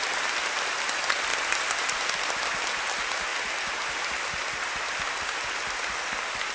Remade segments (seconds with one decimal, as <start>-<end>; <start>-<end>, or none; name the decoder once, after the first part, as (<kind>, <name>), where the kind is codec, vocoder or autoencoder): none